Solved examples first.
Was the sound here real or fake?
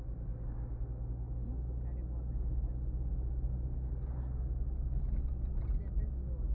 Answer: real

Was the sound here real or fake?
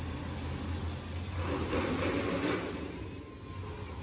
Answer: real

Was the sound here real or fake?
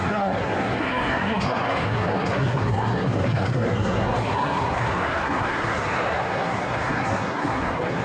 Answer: fake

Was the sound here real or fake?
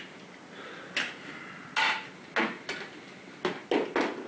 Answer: real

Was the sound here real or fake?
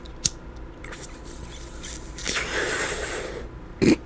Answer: real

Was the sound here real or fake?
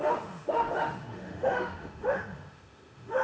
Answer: fake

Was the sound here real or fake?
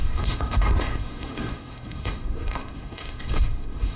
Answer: fake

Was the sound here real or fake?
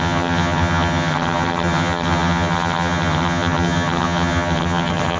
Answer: fake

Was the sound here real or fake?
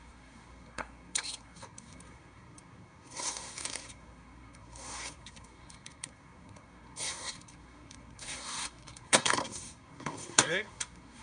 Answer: fake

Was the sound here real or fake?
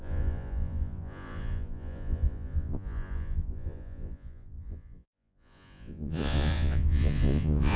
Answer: fake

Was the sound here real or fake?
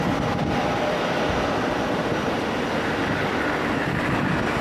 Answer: real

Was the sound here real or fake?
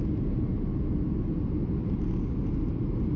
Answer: real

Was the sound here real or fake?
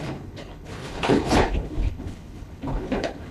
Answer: fake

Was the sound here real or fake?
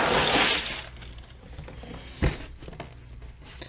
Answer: real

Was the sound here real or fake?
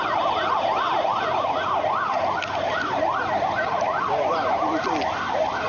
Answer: real